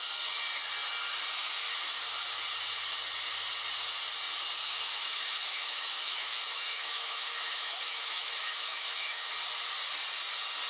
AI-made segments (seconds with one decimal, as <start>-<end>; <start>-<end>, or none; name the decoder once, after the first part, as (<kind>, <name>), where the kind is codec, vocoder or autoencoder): 4.6-9.3 (autoencoder, DAC-VAE)